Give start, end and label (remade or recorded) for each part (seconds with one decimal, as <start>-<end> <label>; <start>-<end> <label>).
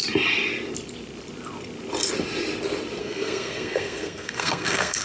0.0-3.0 recorded; 3.0-5.0 remade